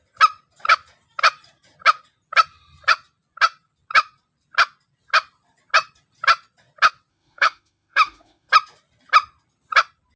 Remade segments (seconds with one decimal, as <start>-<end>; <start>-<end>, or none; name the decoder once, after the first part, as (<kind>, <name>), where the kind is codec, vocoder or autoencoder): 7.1-8.5 (autoencoder, DAC-VAE)